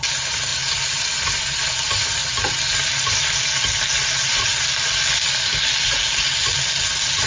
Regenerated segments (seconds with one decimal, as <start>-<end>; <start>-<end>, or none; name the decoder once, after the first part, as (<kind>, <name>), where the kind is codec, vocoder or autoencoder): none